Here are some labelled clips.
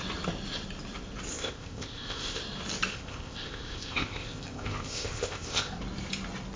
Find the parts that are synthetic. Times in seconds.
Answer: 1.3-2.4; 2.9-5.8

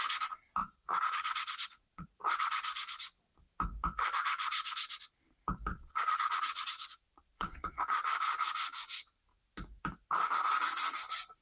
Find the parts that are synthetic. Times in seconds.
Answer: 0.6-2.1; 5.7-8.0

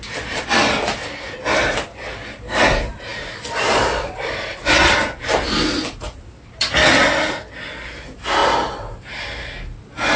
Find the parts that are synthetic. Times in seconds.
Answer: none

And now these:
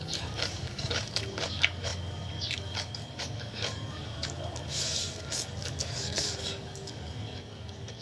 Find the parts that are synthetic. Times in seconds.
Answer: 0.0-8.0

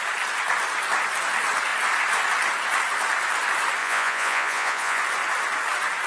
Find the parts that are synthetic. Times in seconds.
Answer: 3.8-5.0

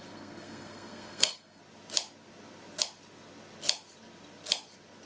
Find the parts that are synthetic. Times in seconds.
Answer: 0.0-1.6

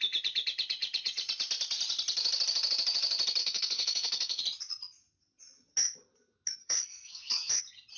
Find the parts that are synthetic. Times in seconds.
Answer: 3.4-4.4; 6.6-7.6

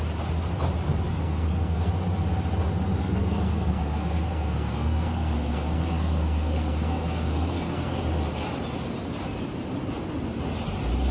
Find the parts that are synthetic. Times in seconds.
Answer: 1.1-1.9; 3.0-8.0